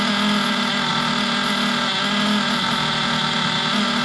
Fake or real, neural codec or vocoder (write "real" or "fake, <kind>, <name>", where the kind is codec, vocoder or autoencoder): real